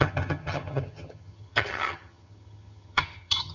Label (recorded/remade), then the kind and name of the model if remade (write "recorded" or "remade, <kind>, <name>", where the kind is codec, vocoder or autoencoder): remade, vocoder, HiFi-GAN